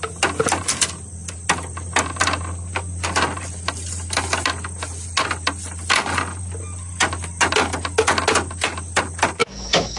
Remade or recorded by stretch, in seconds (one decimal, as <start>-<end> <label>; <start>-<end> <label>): 0.0-9.4 recorded; 9.4-10.0 remade